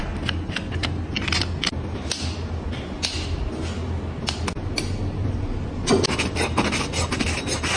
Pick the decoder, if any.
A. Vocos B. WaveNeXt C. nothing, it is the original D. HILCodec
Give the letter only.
C